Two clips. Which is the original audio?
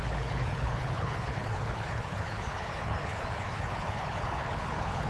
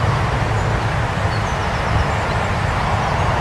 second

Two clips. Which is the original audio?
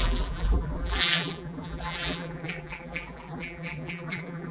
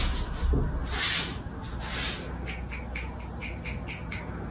second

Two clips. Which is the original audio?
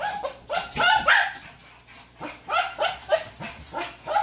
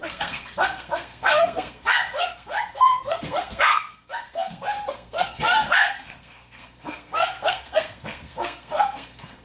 first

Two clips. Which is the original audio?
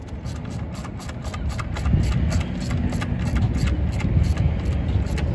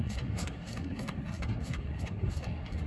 first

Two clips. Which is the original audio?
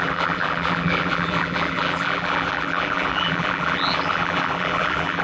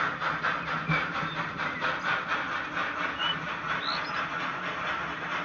second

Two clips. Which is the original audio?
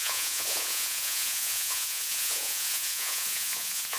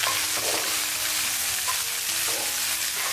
second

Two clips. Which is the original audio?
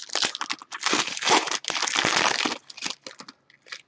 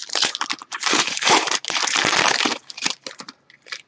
first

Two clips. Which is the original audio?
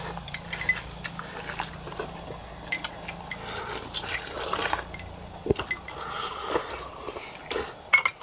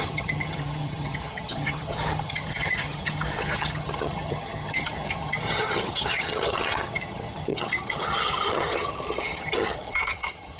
first